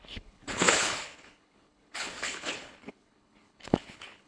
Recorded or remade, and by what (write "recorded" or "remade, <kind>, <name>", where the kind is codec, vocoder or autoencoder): remade, codec, HILCodec